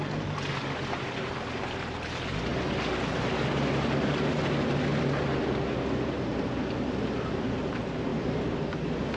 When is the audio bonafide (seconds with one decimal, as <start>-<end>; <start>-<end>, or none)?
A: 0.0-9.2